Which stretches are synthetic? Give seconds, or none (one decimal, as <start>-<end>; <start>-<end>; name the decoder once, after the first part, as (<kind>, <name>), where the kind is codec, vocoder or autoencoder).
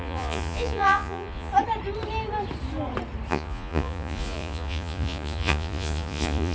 0.0-1.5 (vocoder, Vocos); 3.3-6.5